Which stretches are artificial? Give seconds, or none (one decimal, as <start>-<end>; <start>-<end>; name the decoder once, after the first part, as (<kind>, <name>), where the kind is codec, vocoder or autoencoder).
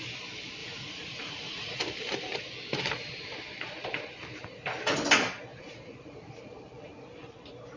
0.6-1.8 (vocoder, Vocos); 5.5-6.3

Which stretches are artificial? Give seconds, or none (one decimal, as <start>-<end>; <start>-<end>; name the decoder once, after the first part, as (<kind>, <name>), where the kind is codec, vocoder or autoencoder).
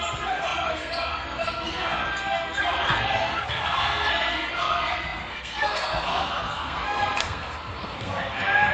0.0-8.7 (codec, SNAC)